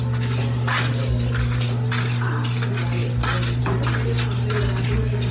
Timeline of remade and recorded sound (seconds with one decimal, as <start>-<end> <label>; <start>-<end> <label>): 0.0-5.3 recorded